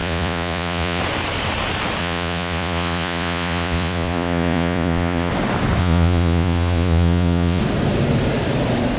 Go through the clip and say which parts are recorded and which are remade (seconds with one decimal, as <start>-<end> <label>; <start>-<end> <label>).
0.0-1.0 remade; 1.0-2.0 recorded; 2.0-5.3 remade; 5.3-5.8 recorded; 5.8-7.6 remade; 7.6-9.0 recorded